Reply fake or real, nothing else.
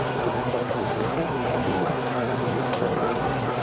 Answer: fake